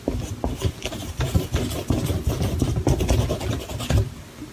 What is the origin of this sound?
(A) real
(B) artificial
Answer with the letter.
A